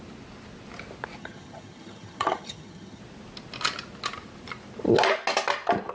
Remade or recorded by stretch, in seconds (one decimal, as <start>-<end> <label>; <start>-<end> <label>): 0.0-1.2 recorded; 1.2-3.0 remade; 3.0-5.9 recorded

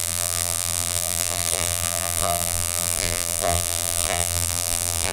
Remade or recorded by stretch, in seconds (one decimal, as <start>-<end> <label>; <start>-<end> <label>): 0.0-5.1 remade

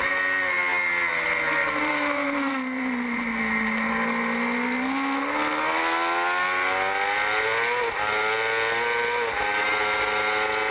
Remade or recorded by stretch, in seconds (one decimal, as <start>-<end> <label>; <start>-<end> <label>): 0.0-1.6 recorded; 1.6-3.9 remade; 3.9-10.7 recorded

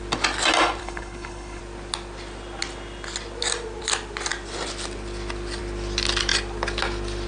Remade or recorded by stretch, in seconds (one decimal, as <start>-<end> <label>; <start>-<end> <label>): 0.0-0.8 recorded; 0.8-1.6 remade; 1.6-7.3 recorded

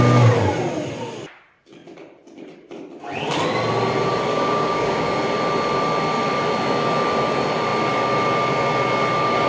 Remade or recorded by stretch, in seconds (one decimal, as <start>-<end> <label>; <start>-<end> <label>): 0.0-4.3 recorded; 4.3-5.1 remade; 5.1-9.5 recorded

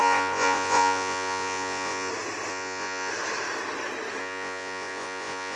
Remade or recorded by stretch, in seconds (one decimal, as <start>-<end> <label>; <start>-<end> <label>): 0.0-2.1 remade; 2.1-2.5 recorded; 2.5-3.1 remade; 3.1-4.2 recorded; 4.2-5.6 remade

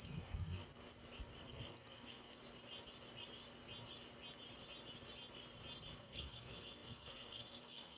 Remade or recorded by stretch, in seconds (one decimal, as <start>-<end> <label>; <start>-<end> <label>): 0.0-0.6 remade; 0.6-1.4 recorded; 1.4-2.4 remade; 2.4-6.0 recorded; 6.0-8.0 remade